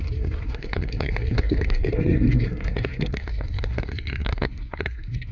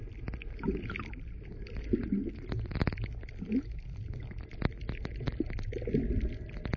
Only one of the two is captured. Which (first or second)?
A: second